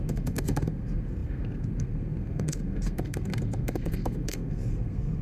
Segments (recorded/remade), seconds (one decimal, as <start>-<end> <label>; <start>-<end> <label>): 0.0-5.2 remade